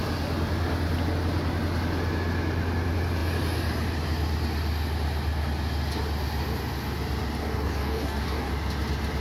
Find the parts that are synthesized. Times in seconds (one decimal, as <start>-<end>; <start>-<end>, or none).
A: 7.4-8.5